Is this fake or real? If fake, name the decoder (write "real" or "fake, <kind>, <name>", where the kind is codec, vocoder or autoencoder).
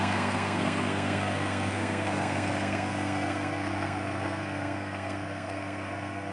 fake, codec, SNAC